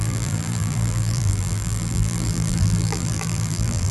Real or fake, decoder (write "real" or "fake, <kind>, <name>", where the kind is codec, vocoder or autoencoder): fake, vocoder, BigVGAN v2